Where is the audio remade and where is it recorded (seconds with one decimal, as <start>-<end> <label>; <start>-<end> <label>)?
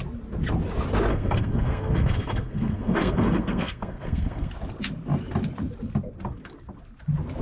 0.0-1.1 recorded; 1.1-4.5 remade; 4.5-7.4 recorded